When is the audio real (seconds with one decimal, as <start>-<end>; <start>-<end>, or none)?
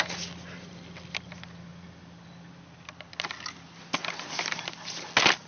0.0-5.5